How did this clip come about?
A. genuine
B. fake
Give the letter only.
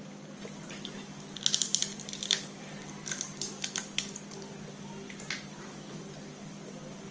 A